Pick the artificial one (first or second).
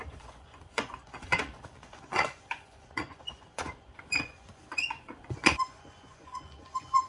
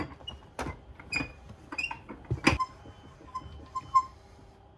first